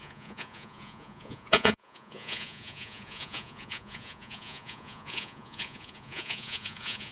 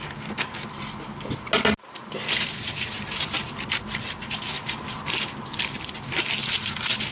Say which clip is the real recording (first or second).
second